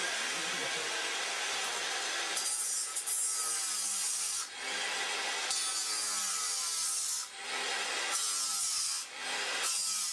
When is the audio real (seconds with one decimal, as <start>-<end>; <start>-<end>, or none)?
0.0-10.1